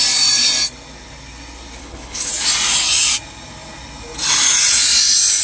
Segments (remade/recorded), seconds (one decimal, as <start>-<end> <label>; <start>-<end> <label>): 0.0-1.8 recorded; 1.8-2.3 remade; 2.3-5.4 recorded